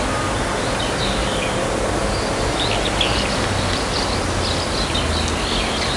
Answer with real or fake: real